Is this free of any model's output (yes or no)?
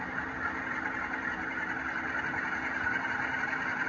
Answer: yes